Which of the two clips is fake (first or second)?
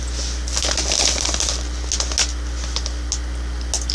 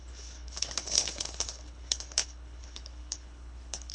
second